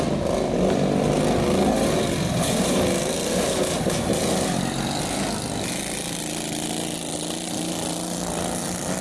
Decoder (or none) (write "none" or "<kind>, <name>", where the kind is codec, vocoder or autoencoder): none